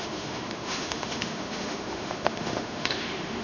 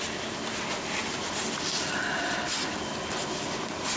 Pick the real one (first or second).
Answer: second